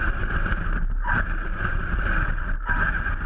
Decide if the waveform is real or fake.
real